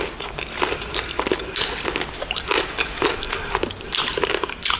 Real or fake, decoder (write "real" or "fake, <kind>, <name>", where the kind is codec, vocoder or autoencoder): real